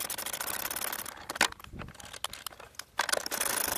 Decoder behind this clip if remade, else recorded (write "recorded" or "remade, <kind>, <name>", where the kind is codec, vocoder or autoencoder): recorded